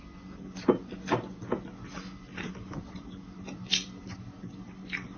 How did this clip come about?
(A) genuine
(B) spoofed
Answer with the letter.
A